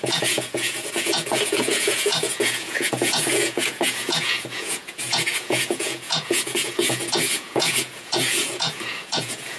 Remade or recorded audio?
remade